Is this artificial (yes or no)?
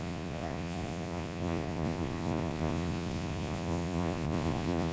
yes